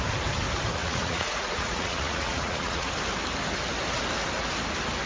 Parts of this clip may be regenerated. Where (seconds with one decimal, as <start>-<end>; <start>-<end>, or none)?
0.8-2.9